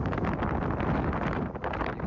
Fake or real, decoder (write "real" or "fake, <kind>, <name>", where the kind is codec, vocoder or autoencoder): real